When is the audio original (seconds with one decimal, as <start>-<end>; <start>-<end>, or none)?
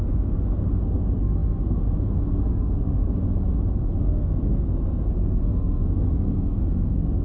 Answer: 3.0-4.0